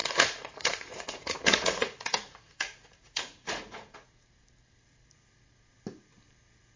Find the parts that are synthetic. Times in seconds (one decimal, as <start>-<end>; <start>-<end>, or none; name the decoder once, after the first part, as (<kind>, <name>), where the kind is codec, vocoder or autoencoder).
0.0-4.1 (vocoder, Vocos)